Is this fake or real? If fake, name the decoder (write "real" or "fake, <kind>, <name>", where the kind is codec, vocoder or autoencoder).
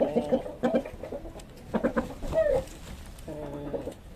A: real